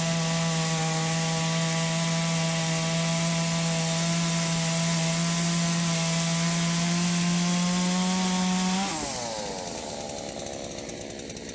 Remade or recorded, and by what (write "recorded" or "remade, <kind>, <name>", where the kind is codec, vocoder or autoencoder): recorded